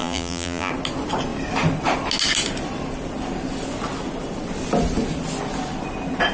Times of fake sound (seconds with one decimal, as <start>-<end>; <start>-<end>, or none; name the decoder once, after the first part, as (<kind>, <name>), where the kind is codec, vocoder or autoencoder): 0.0-0.7 (vocoder, BigVGAN v2)